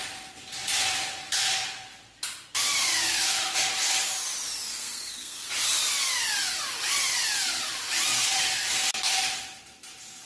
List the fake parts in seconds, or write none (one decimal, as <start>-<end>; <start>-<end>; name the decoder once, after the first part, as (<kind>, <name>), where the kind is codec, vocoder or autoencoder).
4.7-5.5 (codec, SNAC)